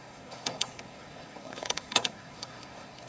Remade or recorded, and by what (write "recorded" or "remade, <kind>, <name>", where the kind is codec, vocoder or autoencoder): remade, codec, SNAC